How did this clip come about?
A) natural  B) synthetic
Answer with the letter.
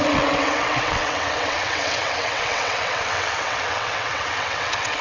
B